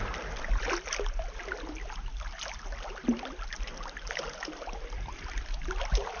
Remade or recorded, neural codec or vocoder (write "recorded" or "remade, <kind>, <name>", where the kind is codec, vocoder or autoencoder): recorded